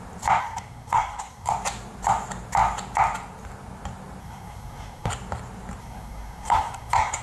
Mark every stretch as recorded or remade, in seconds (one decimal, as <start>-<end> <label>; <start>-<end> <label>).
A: 0.0-0.4 recorded; 0.4-1.5 remade; 1.5-4.2 recorded; 4.2-5.1 remade; 5.1-5.8 recorded; 5.8-7.2 remade